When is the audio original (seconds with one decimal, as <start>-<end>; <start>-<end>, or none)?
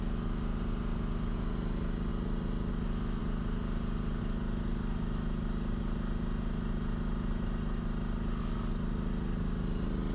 0.0-10.1